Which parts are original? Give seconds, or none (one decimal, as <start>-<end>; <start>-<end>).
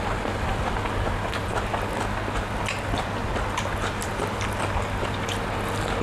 0.0-6.0